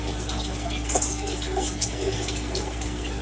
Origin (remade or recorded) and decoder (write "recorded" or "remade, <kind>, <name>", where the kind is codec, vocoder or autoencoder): remade, codec, SNAC